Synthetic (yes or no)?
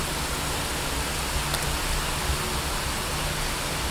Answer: no